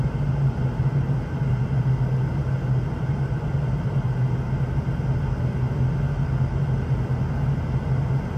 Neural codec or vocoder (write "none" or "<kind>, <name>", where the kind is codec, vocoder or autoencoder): none